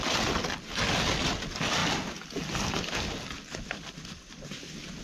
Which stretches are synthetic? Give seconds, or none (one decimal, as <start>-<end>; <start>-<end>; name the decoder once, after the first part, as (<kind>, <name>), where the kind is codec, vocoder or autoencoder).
none